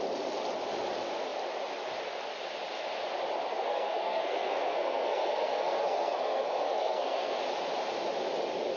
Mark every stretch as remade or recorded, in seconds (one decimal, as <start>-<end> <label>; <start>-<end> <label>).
0.0-3.5 recorded; 3.5-7.4 remade; 7.4-8.8 recorded